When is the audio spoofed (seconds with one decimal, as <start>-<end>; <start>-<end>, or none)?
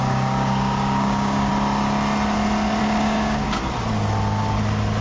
0.0-1.5; 2.8-3.6